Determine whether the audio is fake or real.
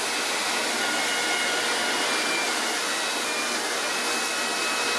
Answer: real